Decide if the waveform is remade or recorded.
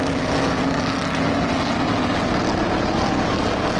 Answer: recorded